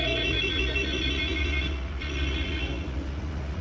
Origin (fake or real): fake